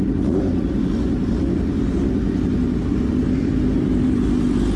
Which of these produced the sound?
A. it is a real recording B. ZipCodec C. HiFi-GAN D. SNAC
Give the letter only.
A